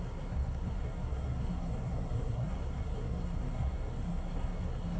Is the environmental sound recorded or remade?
remade